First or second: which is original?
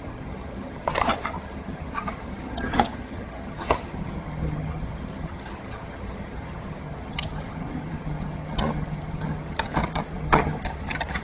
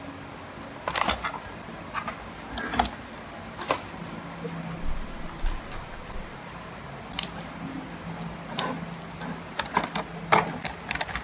second